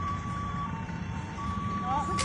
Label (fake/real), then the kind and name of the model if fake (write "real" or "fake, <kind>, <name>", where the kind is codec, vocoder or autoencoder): fake, vocoder, BigVGAN v2